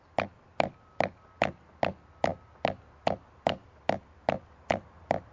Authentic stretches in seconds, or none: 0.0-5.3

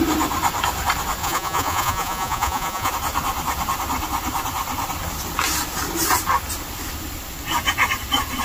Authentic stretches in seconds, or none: 0.0-1.2; 2.9-8.4